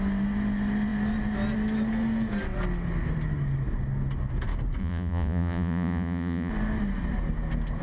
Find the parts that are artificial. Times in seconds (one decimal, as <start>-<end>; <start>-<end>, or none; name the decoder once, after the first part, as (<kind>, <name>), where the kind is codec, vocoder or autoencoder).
4.8-6.5 (vocoder, Vocos)